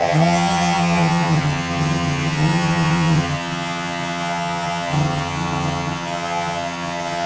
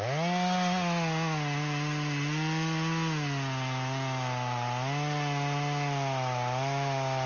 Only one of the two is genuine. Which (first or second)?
second